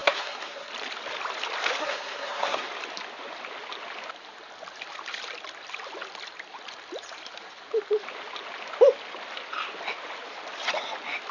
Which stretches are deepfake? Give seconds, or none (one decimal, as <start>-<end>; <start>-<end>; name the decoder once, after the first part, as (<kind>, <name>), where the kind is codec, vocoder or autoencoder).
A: 0.0-0.7 (codec, SNAC); 1.8-2.7